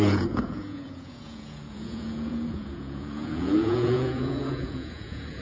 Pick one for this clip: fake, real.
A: fake